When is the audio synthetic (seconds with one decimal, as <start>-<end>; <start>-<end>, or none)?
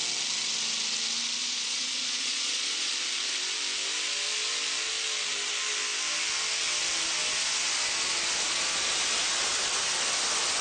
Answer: 1.4-2.9